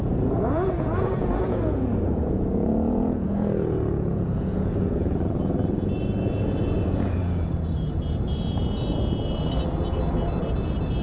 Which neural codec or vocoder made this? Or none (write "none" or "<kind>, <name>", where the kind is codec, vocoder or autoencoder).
vocoder, Vocos